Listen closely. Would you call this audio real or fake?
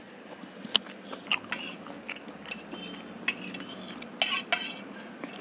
real